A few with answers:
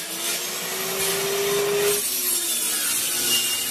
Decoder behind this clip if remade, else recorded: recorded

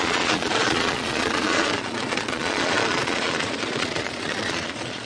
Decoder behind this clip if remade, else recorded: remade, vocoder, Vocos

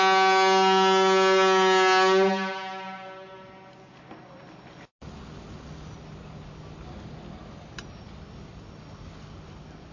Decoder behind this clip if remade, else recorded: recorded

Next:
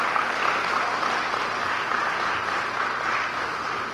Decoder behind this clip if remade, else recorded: recorded